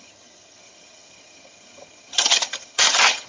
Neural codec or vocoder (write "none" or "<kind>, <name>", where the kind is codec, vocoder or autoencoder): vocoder, HiFi-GAN